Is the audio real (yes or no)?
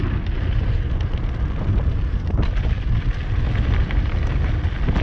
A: yes